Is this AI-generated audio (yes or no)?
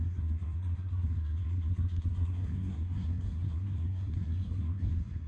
yes